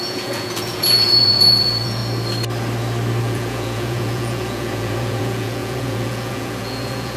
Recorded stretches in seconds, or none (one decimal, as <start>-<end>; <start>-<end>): 2.0-3.2